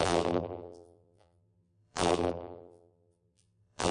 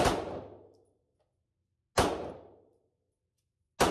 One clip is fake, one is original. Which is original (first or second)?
second